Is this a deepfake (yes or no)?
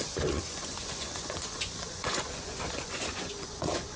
yes